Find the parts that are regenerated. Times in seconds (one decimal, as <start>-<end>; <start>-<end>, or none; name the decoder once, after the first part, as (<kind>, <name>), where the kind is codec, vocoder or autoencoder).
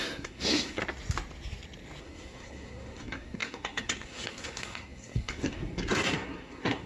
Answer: 0.0-0.8 (codec, SNAC); 2.0-6.9